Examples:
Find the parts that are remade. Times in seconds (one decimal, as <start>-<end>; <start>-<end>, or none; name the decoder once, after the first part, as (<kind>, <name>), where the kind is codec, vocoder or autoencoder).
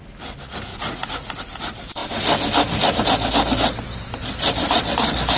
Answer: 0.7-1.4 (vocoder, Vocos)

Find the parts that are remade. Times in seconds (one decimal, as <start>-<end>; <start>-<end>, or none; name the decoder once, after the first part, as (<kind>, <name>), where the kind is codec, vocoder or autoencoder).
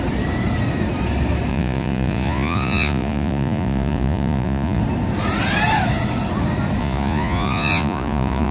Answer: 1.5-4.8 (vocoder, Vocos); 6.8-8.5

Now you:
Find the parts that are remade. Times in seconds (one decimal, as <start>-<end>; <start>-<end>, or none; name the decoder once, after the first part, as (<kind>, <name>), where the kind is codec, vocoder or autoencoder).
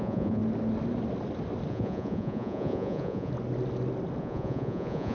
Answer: 0.0-0.4 (vocoder, Vocos); 1.7-3.3; 4.2-5.1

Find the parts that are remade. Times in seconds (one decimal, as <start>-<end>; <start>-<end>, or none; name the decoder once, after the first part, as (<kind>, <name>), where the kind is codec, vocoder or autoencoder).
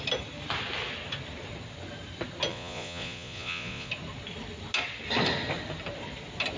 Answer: 2.5-3.9 (vocoder, Vocos)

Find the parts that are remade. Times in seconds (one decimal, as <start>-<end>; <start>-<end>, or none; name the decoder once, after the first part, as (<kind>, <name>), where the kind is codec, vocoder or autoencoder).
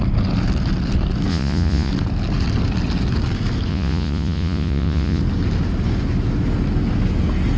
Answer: 1.3-1.9 (vocoder, Vocos); 3.7-5.2